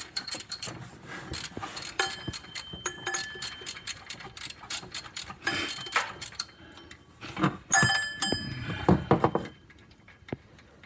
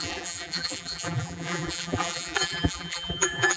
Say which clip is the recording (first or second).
first